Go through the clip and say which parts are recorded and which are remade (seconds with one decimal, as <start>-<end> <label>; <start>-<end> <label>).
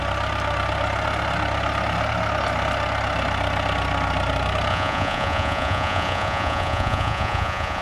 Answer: 0.0-4.7 recorded; 4.7-7.8 remade